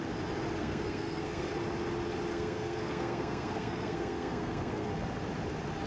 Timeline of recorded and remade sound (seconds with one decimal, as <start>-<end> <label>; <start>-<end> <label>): 0.0-0.6 recorded; 0.6-1.5 remade; 1.5-2.3 recorded; 2.3-4.9 remade; 4.9-5.9 recorded